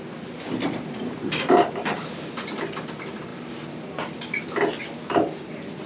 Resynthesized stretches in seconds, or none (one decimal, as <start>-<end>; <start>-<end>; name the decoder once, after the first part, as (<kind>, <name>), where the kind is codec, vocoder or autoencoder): none